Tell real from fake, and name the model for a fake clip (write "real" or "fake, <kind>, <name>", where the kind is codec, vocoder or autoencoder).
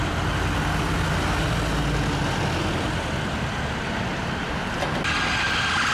real